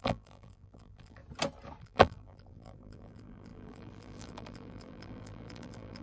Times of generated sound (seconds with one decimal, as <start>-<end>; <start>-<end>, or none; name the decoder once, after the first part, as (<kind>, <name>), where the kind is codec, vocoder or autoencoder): 0.0-1.2 (vocoder, BigVGAN v2); 1.8-6.0